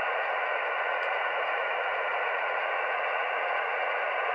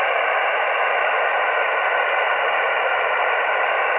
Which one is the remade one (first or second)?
first